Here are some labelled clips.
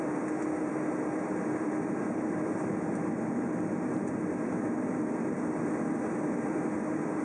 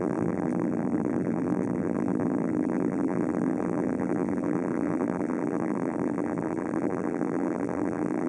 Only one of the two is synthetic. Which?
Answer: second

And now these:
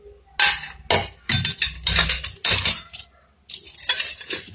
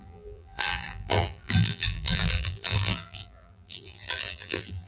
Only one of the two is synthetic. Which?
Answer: second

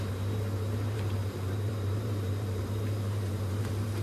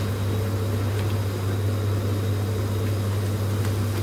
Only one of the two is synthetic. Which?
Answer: first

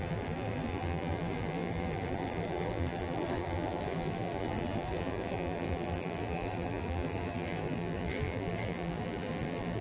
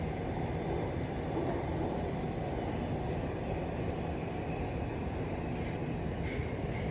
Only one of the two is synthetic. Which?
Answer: first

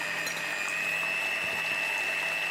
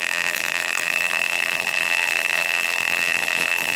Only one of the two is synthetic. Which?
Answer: second